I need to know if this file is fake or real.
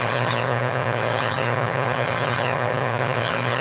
fake